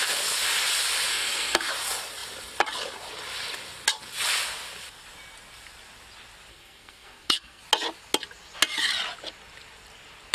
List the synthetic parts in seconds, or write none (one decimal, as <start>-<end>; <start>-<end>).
1.1-1.7; 6.5-7.6